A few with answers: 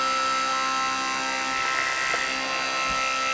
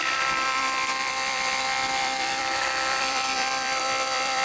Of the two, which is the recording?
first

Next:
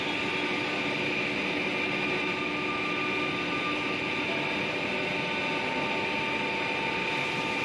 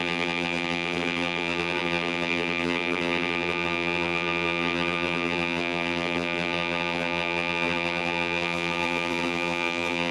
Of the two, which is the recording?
first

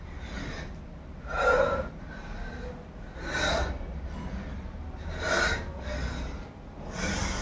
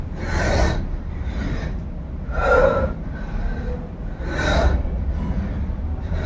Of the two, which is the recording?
first